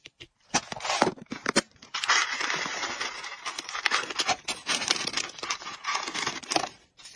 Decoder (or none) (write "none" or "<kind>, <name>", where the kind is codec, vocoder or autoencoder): vocoder, BigVGAN v2